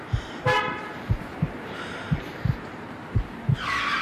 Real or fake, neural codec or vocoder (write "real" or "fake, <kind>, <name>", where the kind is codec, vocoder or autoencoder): fake, vocoder, BigVGAN v2